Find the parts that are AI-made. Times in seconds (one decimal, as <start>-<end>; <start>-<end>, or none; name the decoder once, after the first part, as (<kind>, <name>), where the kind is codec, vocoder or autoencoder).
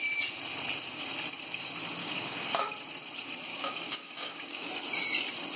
2.0-2.7 (codec, DAC); 3.5-4.7